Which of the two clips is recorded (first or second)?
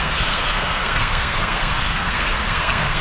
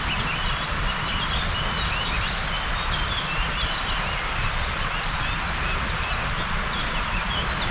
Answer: second